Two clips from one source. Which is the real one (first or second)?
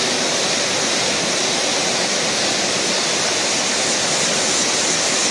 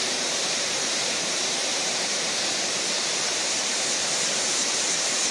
first